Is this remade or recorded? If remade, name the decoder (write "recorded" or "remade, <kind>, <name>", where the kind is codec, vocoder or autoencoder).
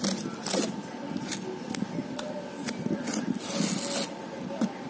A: recorded